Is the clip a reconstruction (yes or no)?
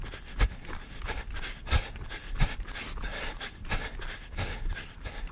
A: no